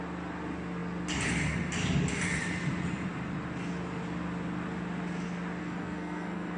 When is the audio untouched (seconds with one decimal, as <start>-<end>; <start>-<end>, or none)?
0.0-5.6